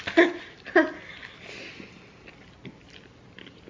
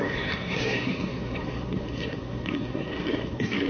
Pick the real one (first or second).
first